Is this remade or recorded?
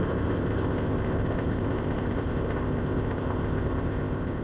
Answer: remade